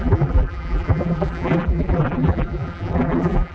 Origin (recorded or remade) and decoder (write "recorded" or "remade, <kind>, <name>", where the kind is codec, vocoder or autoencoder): remade, vocoder, BigVGAN v2